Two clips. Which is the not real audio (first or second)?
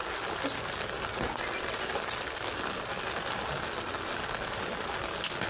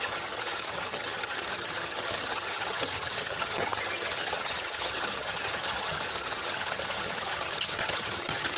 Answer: second